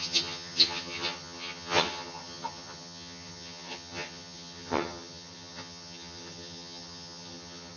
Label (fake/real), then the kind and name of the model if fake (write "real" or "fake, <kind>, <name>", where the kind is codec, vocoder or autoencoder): fake, vocoder, HiFi-GAN